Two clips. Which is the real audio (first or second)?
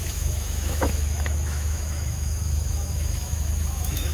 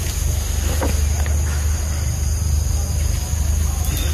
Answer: second